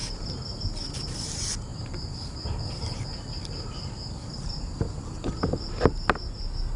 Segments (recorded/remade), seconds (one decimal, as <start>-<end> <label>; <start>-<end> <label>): 0.0-0.6 remade; 0.6-1.7 recorded; 1.7-5.3 remade; 5.3-6.8 recorded